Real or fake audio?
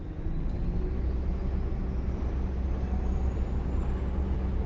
real